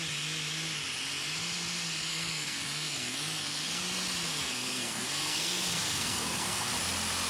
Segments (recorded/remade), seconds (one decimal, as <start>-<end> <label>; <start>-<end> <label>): 0.0-2.1 recorded; 2.1-3.8 remade; 3.8-4.4 recorded; 4.4-6.7 remade; 6.7-7.3 recorded